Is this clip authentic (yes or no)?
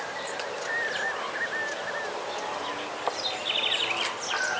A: yes